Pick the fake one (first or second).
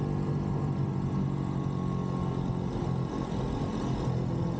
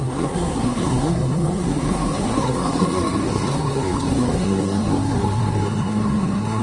second